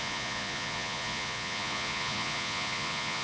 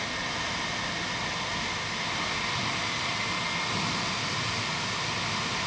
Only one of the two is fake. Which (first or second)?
first